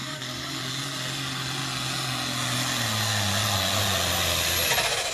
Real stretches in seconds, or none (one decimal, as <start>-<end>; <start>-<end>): 0.6-5.1